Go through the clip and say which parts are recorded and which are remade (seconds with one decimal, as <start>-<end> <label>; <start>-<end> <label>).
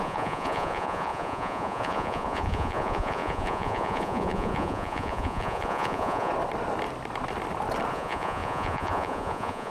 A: 0.0-6.3 remade; 6.3-7.9 recorded; 7.9-9.7 remade